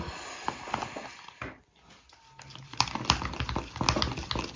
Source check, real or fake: real